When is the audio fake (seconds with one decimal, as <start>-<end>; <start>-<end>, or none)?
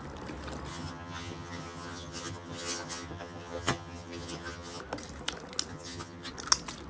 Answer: 0.7-4.8; 5.7-6.3